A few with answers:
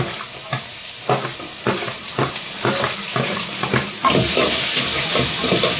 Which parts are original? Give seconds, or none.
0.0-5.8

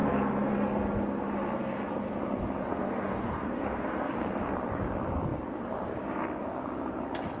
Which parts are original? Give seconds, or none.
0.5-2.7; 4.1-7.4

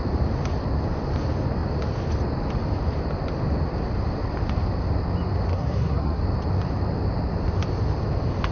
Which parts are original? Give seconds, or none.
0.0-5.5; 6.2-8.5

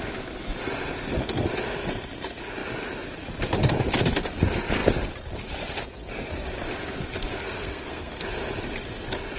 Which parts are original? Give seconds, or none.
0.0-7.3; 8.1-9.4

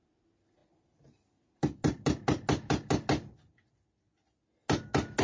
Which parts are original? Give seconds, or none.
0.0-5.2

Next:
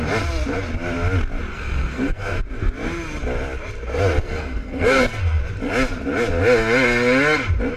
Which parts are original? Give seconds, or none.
0.0-1.5; 2.4-4.2; 5.4-7.8

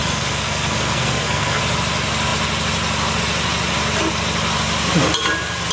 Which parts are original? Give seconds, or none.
1.6-5.7